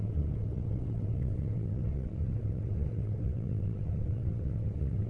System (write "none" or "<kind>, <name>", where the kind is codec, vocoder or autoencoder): vocoder, WaveNeXt